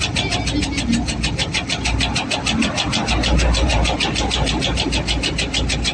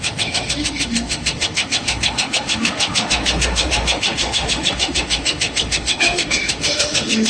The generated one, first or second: second